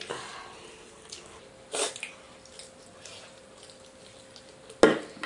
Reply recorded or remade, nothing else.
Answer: recorded